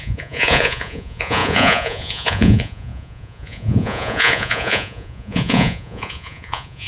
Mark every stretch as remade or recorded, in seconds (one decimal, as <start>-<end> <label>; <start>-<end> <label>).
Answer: 0.0-6.9 remade